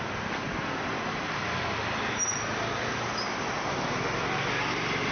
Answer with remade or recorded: recorded